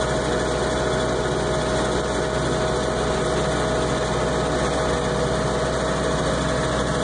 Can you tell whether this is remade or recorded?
recorded